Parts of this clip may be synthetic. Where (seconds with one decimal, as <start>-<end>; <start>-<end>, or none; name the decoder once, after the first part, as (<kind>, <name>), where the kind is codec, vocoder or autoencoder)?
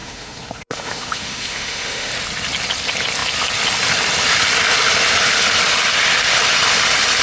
0.0-2.1 (autoencoder, DAC-VAE)